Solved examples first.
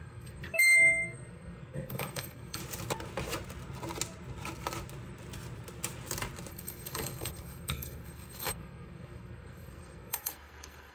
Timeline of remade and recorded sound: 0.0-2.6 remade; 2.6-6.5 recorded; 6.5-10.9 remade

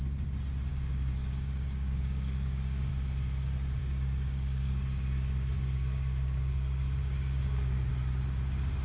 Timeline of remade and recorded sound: 0.0-0.7 recorded; 0.7-2.9 remade; 2.9-3.8 recorded; 3.8-7.9 remade; 7.9-8.8 recorded

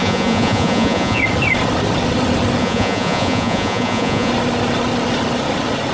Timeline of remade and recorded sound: 0.0-1.2 remade; 1.2-2.6 recorded; 2.6-4.3 remade; 4.3-5.9 recorded

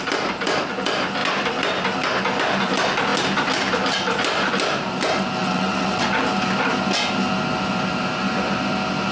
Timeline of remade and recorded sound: 0.0-5.4 recorded; 5.4-6.0 remade; 6.0-9.1 recorded

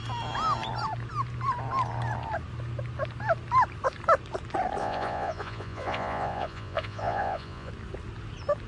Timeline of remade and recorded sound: 0.0-4.8 recorded; 4.8-7.7 remade; 7.7-8.7 recorded

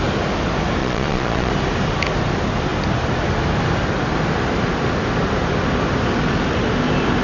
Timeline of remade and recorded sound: 0.0-0.8 recorded; 0.8-1.5 remade; 1.5-7.2 recorded